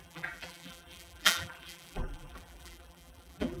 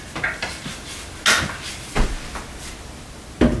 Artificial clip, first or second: first